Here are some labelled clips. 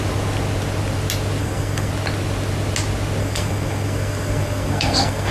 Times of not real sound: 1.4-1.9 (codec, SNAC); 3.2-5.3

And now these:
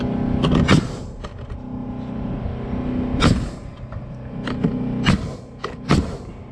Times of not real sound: none

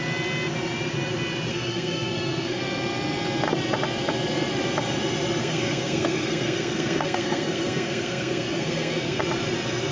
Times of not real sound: 1.5-2.6 (codec, SNAC); 5.4-9.2

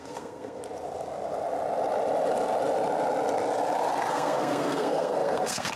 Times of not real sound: 0.0-0.6 (codec, SNAC); 4.1-5.8

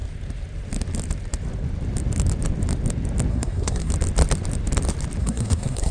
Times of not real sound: 3.3-3.9 (codec, SNAC); 5.2-5.9